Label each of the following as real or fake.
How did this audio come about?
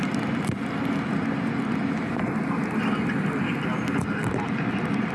real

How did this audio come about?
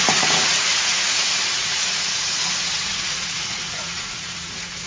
fake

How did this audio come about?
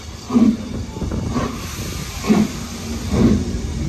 real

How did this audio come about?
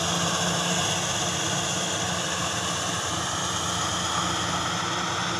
real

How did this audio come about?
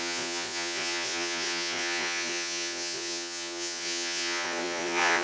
fake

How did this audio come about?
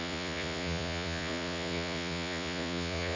fake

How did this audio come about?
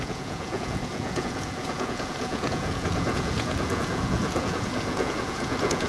fake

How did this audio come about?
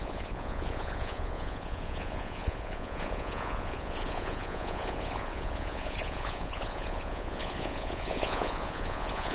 fake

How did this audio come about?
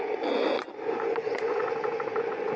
fake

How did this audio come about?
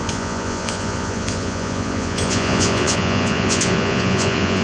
fake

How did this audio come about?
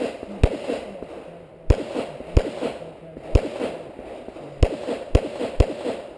real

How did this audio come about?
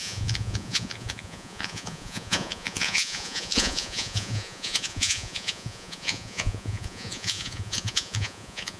fake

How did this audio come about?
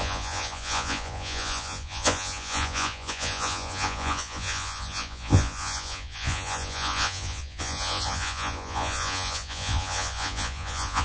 fake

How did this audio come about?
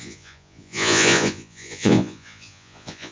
fake